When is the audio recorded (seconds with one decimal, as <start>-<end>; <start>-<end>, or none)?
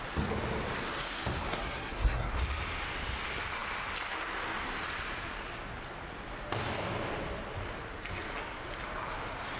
0.0-1.5; 2.3-9.6